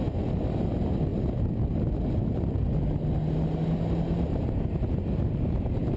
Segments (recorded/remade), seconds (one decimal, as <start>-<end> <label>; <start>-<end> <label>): 0.0-6.0 recorded